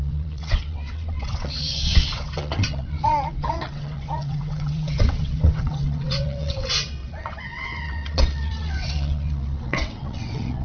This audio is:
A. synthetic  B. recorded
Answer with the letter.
A